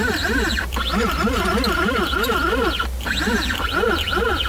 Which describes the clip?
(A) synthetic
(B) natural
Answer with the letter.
B